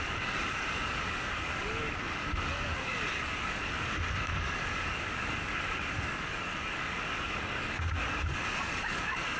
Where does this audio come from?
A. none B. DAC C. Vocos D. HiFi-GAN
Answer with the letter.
B